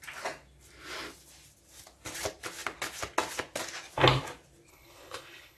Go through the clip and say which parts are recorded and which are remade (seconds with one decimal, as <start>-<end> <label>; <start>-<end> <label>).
0.0-4.7 recorded; 4.7-5.6 remade